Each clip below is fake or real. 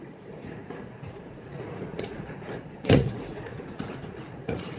fake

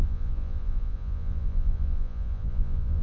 fake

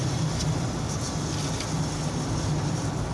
real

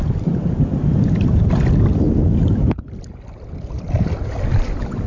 real